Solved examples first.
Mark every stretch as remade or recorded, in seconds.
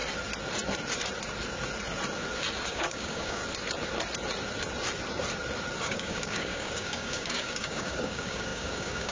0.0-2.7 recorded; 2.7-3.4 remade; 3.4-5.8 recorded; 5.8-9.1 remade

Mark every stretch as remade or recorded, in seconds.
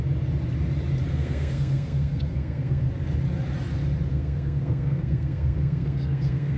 0.0-1.1 recorded; 1.1-2.9 remade; 2.9-4.1 recorded; 4.1-6.6 remade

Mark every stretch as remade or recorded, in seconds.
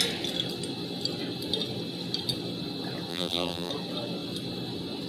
0.0-3.1 recorded; 3.1-3.7 remade; 3.7-5.1 recorded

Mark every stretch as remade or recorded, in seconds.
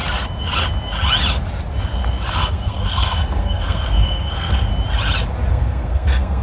0.0-2.3 recorded; 2.3-4.7 remade; 4.7-5.5 recorded; 5.5-6.4 remade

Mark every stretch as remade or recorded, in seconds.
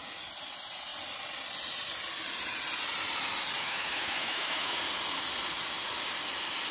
0.0-3.6 recorded; 3.6-4.8 remade; 4.8-6.7 recorded